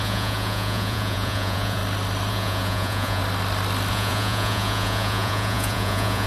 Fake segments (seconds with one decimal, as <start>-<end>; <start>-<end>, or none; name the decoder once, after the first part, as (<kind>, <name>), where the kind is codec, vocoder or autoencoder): 0.0-1.8 (vocoder, Vocos); 2.3-3.2; 3.9-6.3